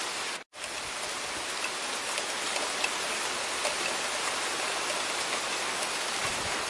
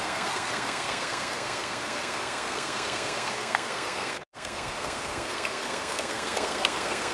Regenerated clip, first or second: second